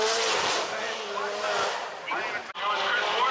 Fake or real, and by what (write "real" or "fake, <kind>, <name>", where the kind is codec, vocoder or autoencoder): real